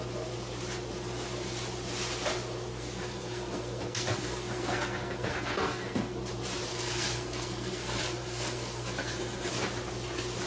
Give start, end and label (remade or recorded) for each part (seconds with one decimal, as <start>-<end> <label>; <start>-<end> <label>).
0.0-2.7 recorded; 2.7-6.2 remade; 6.2-6.7 recorded; 6.7-9.5 remade; 9.5-10.5 recorded